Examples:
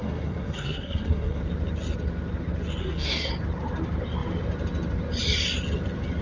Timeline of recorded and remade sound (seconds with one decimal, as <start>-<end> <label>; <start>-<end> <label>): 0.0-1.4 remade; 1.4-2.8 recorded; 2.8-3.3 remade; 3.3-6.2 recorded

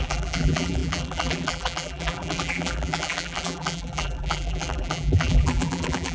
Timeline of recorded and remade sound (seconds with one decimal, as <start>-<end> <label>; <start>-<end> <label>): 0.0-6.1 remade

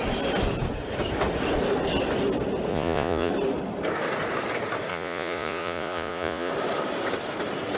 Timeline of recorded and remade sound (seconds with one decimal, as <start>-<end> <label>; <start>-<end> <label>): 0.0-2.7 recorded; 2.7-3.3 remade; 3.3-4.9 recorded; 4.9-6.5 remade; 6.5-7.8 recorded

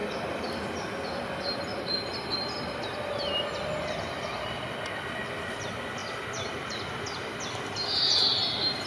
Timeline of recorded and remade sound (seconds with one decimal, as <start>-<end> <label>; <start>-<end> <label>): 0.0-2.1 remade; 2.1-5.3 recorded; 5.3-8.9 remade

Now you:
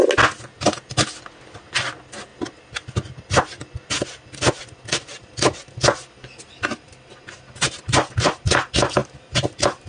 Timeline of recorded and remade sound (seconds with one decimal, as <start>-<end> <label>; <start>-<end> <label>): 0.0-9.9 recorded